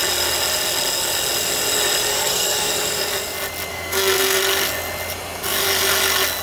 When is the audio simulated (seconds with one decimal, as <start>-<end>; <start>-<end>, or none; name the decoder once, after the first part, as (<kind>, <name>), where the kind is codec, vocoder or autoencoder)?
2.1-2.7 (codec, SNAC); 3.7-4.4